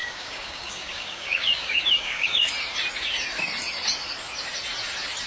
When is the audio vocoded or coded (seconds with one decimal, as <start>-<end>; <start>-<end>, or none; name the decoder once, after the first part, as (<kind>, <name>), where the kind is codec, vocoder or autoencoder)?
0.0-2.5 (codec, DAC)